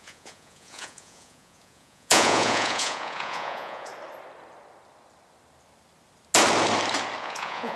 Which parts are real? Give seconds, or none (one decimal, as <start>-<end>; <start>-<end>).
3.9-7.2